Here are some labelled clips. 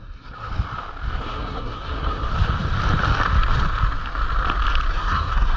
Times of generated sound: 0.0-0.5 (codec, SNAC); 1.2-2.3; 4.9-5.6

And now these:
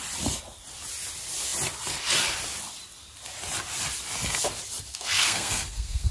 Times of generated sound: 4.9-6.1 (codec, SNAC)